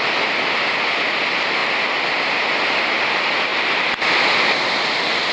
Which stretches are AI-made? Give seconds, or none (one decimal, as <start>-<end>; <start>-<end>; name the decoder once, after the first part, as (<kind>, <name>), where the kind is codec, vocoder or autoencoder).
none

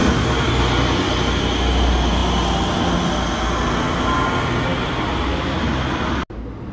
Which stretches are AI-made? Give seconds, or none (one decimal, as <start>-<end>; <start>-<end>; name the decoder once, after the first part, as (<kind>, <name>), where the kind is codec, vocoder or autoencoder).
none

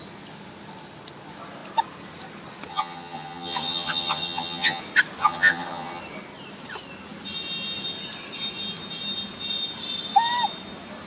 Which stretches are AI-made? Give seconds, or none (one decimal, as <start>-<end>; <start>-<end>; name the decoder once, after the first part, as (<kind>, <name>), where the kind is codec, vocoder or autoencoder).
2.7-4.8 (vocoder, HiFi-GAN); 5.2-6.0

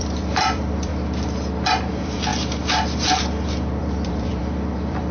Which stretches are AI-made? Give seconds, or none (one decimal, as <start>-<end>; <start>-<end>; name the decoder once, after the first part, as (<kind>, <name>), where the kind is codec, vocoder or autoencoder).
0.0-0.9 (vocoder, BigVGAN v2); 1.9-2.3; 3.5-5.1

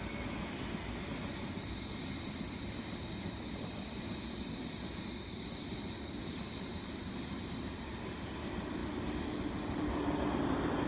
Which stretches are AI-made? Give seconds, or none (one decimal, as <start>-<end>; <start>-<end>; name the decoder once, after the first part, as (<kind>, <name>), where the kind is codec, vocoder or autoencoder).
none